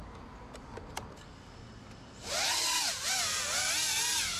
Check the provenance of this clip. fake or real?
real